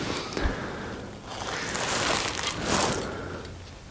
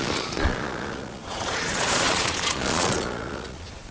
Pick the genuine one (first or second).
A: first